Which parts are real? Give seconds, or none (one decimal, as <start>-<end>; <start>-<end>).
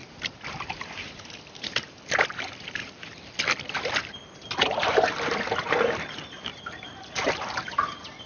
2.8-4.6